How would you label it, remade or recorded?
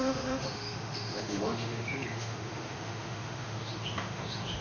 remade